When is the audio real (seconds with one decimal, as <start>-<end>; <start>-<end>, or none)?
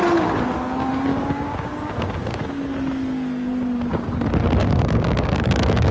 0.0-1.1; 2.6-4.6